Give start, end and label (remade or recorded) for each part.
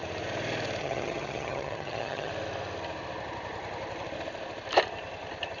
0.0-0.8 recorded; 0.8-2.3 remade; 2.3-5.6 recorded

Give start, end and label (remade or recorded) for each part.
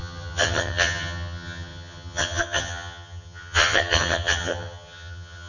0.0-5.5 remade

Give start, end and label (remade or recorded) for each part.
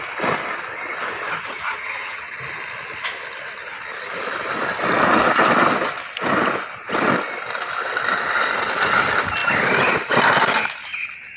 0.0-1.8 recorded; 1.8-2.4 remade; 2.4-11.4 recorded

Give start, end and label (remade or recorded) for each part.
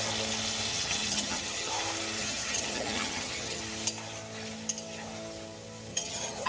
0.0-0.7 recorded; 0.7-1.7 remade; 1.7-2.2 recorded; 2.2-3.6 remade; 3.6-5.9 recorded; 5.9-6.5 remade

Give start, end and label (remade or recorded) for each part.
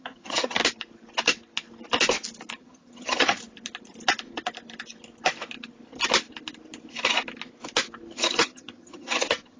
0.0-0.6 remade; 0.6-2.6 recorded; 2.6-3.4 remade; 3.4-8.1 recorded; 8.1-9.6 remade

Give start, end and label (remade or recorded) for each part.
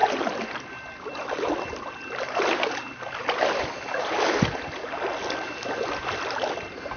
0.0-7.0 recorded